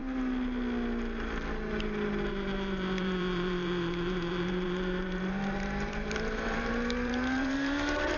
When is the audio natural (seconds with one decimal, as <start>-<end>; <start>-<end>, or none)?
0.0-2.3